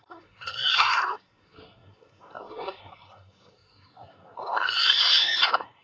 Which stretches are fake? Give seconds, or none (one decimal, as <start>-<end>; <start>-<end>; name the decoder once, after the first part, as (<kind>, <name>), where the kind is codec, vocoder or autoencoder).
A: 0.0-5.8 (codec, SNAC)